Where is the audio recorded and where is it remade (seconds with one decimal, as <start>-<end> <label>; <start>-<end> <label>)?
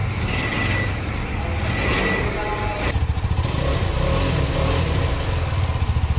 0.0-6.2 recorded